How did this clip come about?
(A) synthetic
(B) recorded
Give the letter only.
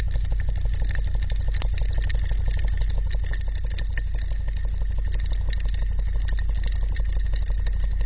B